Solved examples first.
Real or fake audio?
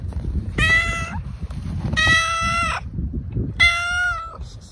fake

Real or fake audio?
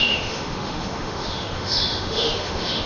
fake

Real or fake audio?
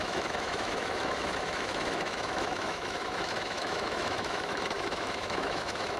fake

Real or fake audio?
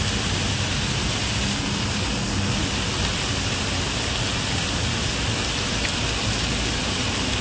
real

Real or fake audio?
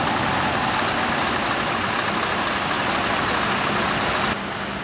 real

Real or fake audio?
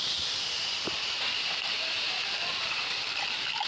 real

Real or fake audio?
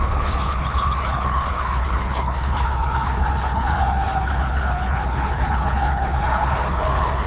fake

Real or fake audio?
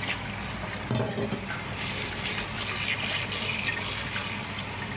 real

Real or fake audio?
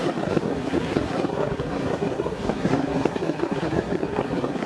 fake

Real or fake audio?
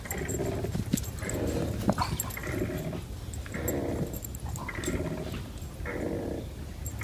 real